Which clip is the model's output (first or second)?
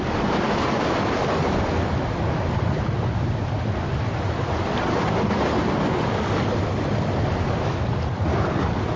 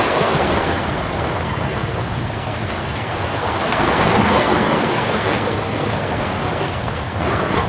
second